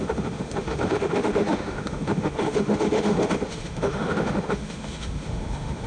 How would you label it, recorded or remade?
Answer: remade